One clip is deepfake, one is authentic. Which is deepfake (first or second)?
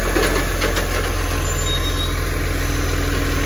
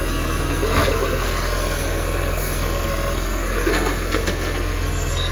second